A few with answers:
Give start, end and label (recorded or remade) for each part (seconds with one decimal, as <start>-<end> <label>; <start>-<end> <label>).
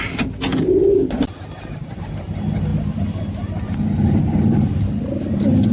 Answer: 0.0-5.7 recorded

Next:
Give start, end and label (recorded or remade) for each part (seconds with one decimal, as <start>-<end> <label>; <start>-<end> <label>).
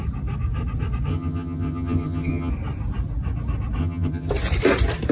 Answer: 0.0-1.1 recorded; 1.1-2.5 remade; 2.5-3.8 recorded; 3.8-4.3 remade; 4.3-5.1 recorded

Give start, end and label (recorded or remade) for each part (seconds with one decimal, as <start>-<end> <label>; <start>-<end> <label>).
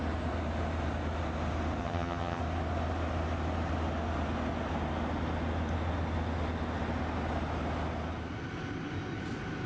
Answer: 0.0-1.8 recorded; 1.8-2.4 remade; 2.4-9.7 recorded